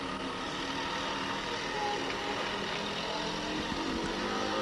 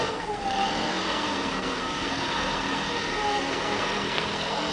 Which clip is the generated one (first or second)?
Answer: second